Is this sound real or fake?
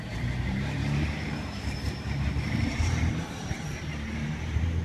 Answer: fake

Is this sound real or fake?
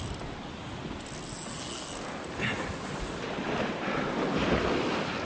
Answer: real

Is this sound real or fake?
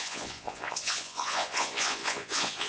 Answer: fake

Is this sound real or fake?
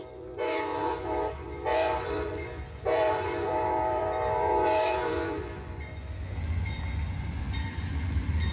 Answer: fake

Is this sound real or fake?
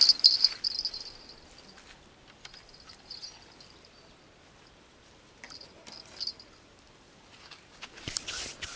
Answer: real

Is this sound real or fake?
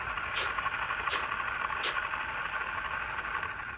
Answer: real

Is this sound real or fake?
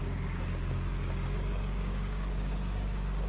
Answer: fake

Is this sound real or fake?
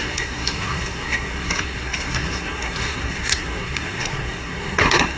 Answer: fake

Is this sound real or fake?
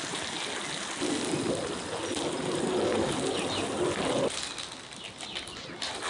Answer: real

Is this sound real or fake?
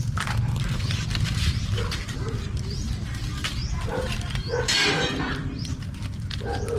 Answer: fake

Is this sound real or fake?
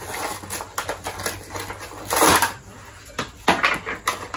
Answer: real